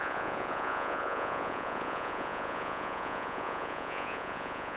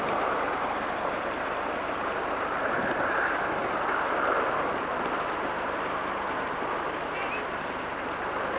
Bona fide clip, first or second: second